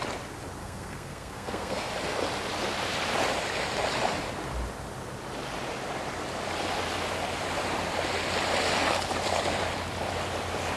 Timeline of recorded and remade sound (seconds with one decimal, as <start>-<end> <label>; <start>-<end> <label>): 0.0-0.6 recorded; 0.6-1.9 remade; 1.9-10.8 recorded